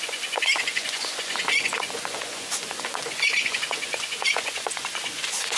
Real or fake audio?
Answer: fake